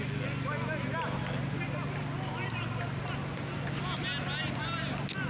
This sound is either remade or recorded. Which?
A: recorded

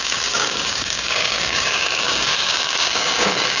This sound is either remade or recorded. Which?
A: remade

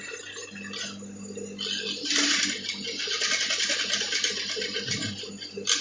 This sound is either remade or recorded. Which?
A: recorded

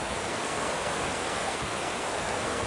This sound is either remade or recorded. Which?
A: remade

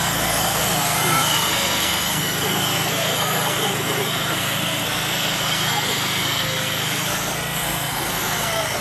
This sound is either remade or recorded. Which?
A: remade